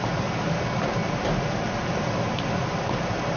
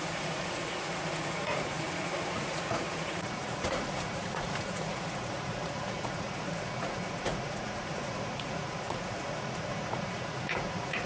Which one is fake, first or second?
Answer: second